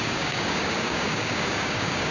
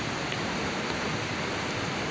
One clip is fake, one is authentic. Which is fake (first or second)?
first